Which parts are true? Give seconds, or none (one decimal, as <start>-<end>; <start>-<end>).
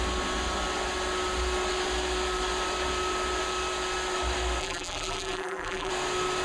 0.0-4.6; 5.9-6.4